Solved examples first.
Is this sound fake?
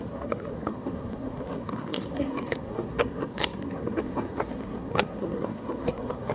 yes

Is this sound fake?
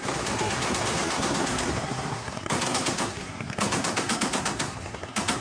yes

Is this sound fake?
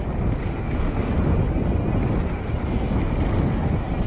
no